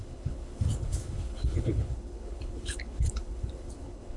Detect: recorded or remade remade